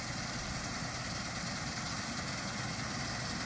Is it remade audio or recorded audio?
recorded